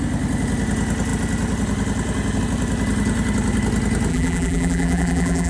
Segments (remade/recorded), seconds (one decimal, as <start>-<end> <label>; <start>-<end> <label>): 0.0-4.1 recorded; 4.1-5.5 remade